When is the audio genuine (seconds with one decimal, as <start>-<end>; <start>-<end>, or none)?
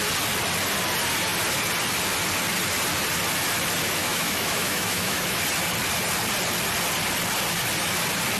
0.0-4.0; 5.4-8.4